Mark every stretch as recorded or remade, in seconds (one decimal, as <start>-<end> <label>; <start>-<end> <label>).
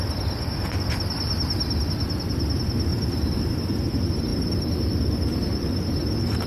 0.0-2.9 recorded; 2.9-3.5 remade; 3.5-4.3 recorded; 4.3-6.5 remade